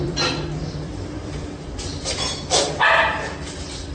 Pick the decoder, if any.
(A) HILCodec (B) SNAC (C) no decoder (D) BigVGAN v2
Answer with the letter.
D